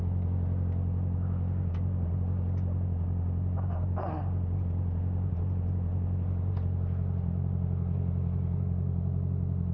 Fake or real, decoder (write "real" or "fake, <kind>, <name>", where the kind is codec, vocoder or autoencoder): real